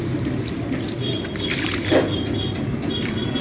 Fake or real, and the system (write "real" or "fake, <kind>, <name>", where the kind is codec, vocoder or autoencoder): real